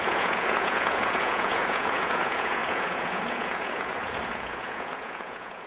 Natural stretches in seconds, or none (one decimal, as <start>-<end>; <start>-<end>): none